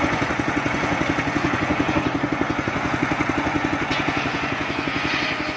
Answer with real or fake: fake